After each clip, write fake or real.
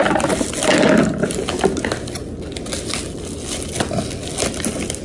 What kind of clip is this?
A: real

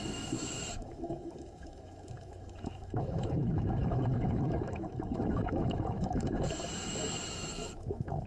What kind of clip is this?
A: fake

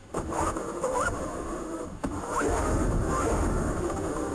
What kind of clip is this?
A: fake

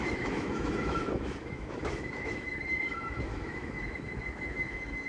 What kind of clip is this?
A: fake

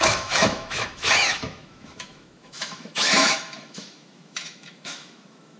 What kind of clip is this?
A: fake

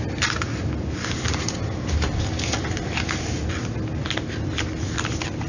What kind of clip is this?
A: real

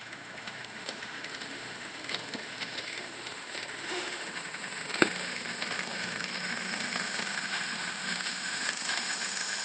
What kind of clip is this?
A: fake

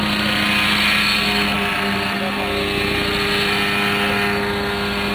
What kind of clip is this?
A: real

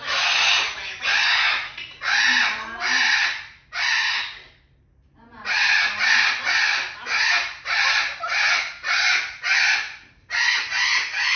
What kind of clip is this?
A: real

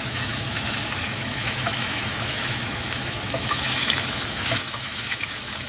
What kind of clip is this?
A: fake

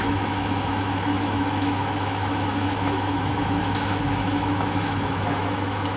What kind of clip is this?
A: fake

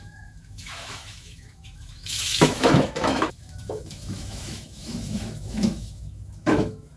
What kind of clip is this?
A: fake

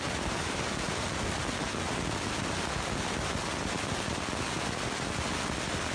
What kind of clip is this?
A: real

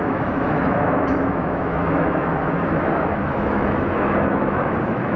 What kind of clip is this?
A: fake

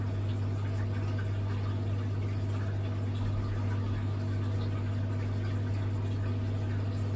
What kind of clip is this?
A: real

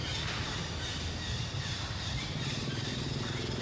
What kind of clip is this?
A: real